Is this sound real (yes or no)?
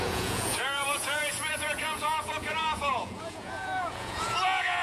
no